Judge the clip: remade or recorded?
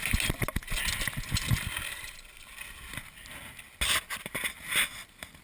recorded